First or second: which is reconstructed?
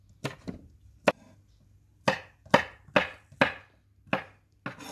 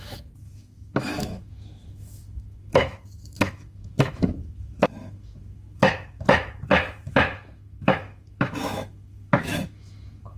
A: second